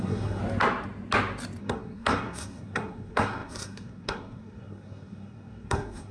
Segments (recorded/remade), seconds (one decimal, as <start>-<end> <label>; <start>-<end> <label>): 0.0-0.4 remade; 0.4-1.6 recorded; 1.6-6.1 remade

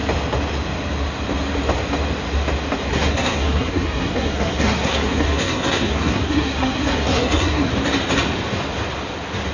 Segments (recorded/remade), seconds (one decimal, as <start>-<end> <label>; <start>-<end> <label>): 0.0-2.9 recorded; 2.9-7.7 remade; 7.7-9.5 recorded